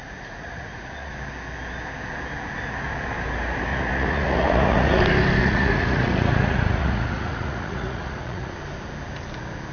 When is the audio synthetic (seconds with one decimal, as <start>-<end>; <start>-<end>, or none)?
0.0-1.1; 3.7-5.0; 5.4-8.5